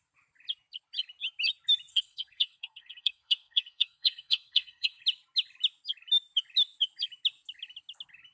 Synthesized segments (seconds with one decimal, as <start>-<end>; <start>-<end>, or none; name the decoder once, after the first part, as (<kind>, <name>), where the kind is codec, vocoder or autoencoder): 1.9-5.0 (codec, SNAC)